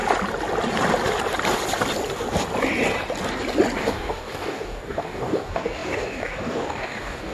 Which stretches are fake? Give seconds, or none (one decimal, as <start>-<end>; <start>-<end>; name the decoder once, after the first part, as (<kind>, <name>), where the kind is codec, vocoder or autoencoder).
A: 3.8-7.3 (codec, DAC)